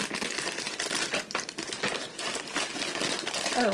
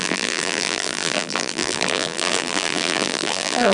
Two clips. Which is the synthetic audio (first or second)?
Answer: second